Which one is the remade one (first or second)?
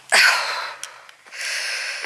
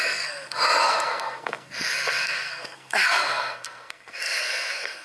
second